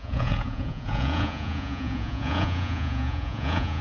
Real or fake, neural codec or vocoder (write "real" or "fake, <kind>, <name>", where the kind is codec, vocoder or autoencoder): fake, vocoder, Vocos